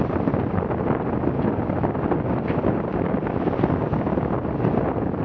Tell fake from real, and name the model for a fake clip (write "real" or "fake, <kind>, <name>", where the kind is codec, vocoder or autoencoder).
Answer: real